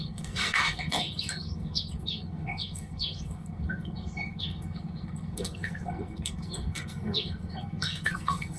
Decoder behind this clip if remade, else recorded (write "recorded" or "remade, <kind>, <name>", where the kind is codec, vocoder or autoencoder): remade, codec, SNAC